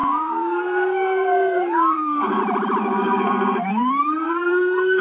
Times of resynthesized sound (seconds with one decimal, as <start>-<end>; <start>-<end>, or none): 0.0-2.4; 2.8-5.0